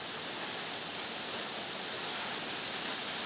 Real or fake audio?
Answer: real